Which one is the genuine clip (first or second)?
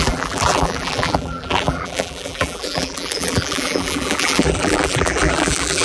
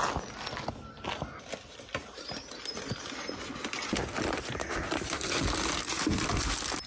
second